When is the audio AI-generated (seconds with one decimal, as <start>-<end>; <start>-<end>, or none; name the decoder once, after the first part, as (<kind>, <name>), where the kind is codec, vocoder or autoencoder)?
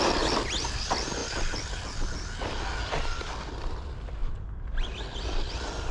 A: none